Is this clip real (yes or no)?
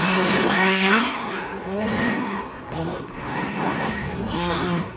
no